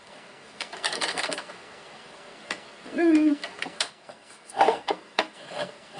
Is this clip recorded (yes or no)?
no